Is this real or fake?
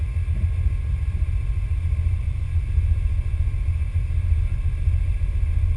real